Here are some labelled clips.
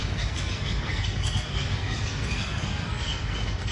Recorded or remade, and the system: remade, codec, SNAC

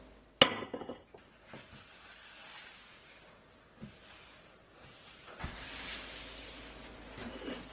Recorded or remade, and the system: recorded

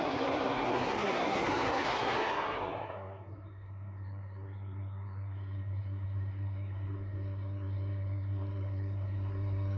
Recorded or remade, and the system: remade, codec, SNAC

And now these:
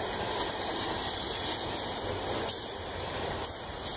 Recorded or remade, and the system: recorded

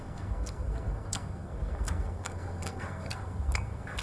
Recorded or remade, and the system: remade, codec, SNAC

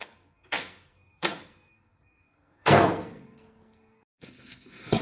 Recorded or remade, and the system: remade, codec, SNAC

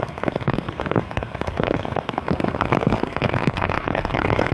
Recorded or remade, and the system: remade, codec, SNAC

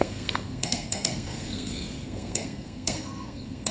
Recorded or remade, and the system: remade, codec, SNAC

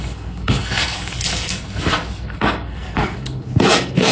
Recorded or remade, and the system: remade, codec, SNAC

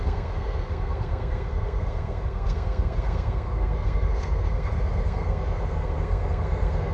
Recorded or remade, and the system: remade, codec, SNAC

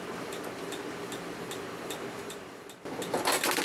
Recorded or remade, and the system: recorded